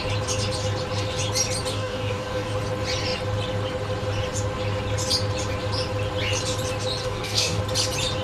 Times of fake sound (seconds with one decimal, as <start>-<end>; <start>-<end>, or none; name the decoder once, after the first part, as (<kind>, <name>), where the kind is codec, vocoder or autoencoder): 1.7-2.5 (codec, DAC); 7.0-7.6

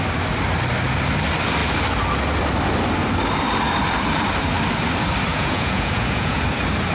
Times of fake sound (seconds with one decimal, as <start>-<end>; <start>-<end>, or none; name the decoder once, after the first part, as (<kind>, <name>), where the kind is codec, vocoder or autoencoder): 5.3-6.4 (vocoder, Vocos)

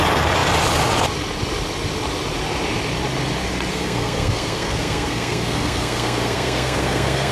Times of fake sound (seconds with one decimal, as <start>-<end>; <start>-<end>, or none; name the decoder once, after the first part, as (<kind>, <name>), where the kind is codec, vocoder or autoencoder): 3.7-7.3 (codec, SNAC)

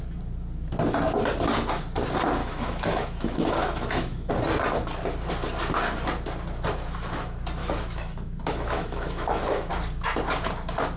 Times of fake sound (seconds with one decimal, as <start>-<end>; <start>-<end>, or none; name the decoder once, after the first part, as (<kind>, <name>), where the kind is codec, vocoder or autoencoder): 2.4-4.3 (autoencoder, DAC-VAE); 7.6-9.7

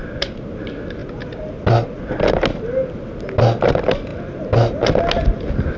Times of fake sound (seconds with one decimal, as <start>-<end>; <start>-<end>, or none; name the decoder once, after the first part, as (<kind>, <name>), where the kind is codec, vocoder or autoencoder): none

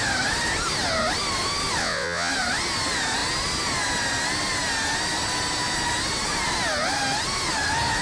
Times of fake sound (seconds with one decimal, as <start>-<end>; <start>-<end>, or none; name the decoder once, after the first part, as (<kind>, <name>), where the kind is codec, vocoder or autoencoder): 1.8-2.3 (vocoder, WaveNeXt)

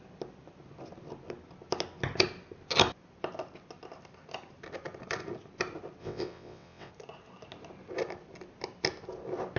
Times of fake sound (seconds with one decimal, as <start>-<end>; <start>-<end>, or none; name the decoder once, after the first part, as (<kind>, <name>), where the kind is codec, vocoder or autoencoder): 6.0-6.9 (vocoder, WaveNeXt)